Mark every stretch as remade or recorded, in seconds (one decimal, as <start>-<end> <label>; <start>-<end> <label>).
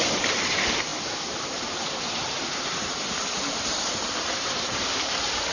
0.0-5.5 remade